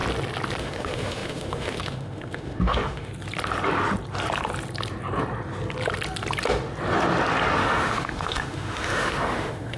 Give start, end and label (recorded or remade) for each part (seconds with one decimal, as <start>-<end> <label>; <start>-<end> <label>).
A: 0.0-0.6 recorded; 0.6-3.1 remade; 3.1-7.6 recorded; 7.6-9.8 remade